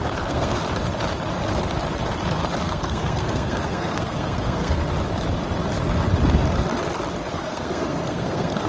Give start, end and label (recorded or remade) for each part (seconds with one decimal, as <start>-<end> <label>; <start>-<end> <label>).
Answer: 0.0-0.6 remade; 0.6-2.6 recorded; 2.6-4.8 remade; 4.8-7.3 recorded; 7.3-8.7 remade